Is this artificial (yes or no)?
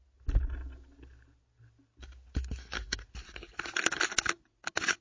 no